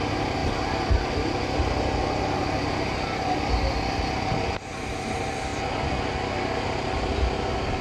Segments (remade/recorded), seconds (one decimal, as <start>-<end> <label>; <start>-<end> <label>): 0.0-7.8 recorded